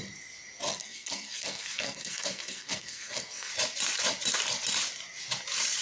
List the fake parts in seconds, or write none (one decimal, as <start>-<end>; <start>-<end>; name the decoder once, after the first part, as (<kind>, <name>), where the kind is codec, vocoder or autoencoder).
0.7-3.5 (codec, SNAC)

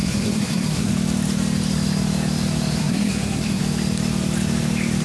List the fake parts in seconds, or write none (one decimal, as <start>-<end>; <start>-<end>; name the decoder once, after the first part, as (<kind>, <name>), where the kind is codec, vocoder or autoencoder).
0.0-0.9 (codec, SNAC); 2.8-3.6